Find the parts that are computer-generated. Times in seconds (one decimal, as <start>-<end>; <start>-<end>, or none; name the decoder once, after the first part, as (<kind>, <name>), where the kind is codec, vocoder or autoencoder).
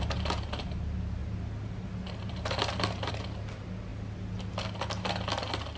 none